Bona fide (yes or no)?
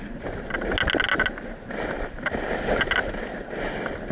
yes